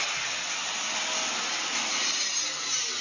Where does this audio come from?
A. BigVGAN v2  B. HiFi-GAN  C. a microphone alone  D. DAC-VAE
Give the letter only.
C